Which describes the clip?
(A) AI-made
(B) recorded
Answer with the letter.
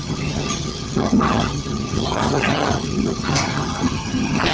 A